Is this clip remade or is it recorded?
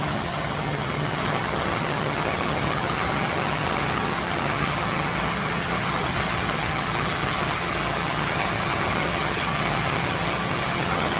remade